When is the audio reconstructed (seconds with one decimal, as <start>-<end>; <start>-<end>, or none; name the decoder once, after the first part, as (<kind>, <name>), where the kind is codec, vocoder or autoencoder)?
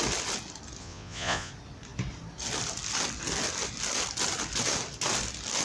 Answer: 0.8-1.5 (vocoder, Vocos)